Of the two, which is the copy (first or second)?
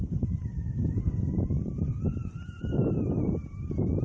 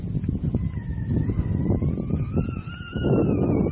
first